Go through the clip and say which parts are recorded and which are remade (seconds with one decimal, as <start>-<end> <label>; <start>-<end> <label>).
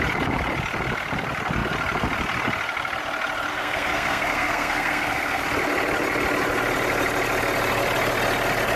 0.0-3.5 recorded; 3.5-5.4 remade; 5.4-8.8 recorded